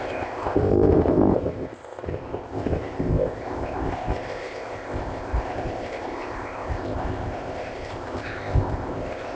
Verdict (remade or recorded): remade